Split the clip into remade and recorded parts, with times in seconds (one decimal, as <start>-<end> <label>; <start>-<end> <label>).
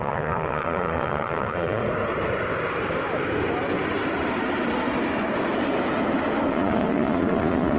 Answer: 0.0-1.8 remade; 1.8-6.5 recorded; 6.5-7.8 remade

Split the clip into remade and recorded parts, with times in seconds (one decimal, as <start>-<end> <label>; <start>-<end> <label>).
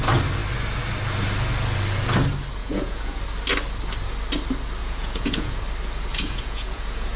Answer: 0.0-2.6 recorded; 2.6-3.2 remade; 3.2-4.8 recorded; 4.8-5.6 remade; 5.6-6.1 recorded; 6.1-7.2 remade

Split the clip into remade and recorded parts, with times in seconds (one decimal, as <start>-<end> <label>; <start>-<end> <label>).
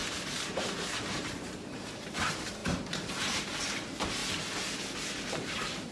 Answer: 0.0-0.9 recorded; 0.9-4.2 remade; 4.2-5.3 recorded; 5.3-5.9 remade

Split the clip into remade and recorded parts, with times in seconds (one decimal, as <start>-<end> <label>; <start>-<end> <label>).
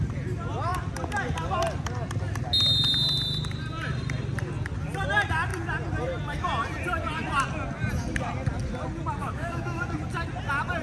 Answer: 0.0-9.2 recorded; 9.2-9.8 remade; 9.8-10.8 recorded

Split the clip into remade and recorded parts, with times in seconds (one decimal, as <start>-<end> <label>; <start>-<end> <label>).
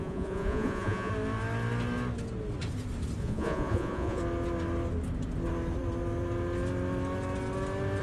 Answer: 0.0-1.1 remade; 1.1-3.2 recorded; 3.2-4.2 remade; 4.2-8.0 recorded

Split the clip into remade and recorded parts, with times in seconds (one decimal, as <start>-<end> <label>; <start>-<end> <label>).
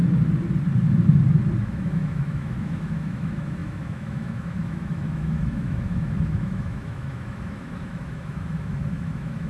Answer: 0.0-1.6 recorded; 1.6-9.5 remade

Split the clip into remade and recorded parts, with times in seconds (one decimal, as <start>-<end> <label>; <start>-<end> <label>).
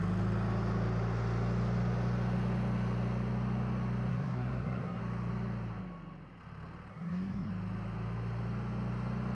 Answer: 0.0-4.1 recorded; 4.1-5.0 remade; 5.0-6.9 recorded; 6.9-7.5 remade; 7.5-9.3 recorded